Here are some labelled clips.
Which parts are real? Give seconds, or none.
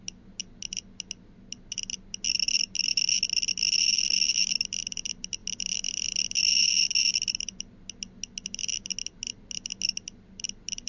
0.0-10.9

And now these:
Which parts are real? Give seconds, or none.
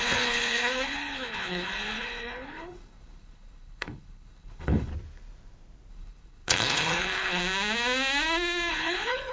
4.9-5.9; 7.4-8.7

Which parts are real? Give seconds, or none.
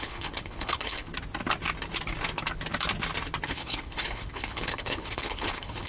1.1-3.5